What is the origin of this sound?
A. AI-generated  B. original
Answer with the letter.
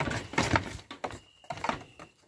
B